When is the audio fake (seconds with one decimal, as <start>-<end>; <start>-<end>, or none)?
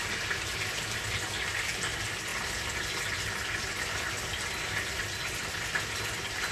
none